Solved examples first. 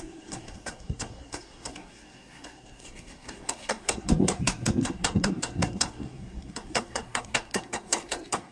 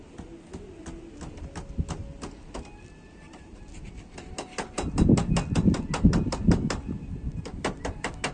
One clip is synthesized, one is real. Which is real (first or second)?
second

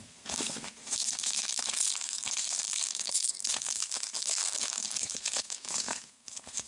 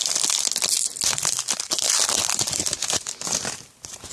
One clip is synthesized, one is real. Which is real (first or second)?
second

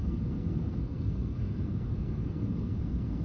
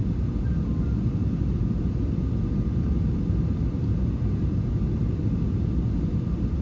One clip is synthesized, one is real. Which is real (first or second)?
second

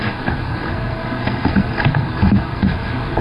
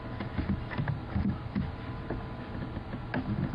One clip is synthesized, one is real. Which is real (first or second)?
second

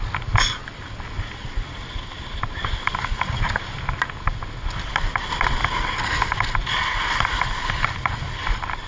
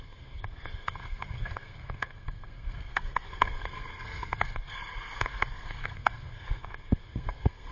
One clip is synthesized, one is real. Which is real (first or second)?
first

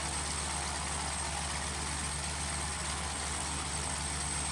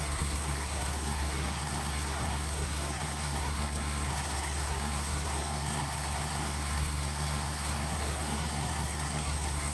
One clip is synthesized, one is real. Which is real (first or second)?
first